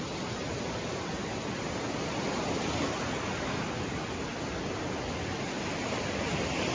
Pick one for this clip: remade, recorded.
recorded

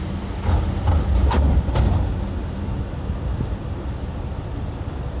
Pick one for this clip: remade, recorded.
recorded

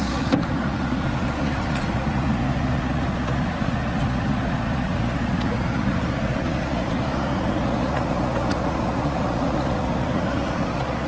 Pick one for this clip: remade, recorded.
remade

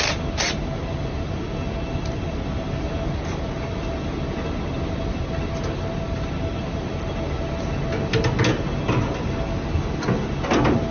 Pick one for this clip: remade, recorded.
recorded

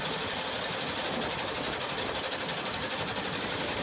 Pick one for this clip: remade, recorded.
recorded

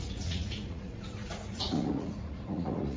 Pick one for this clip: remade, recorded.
remade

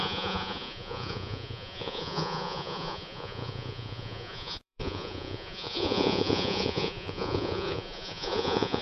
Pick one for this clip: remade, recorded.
remade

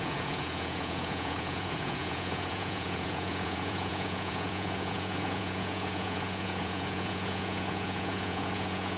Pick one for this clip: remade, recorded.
remade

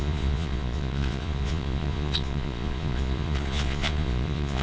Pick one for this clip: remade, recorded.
remade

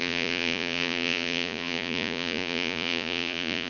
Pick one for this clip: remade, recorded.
remade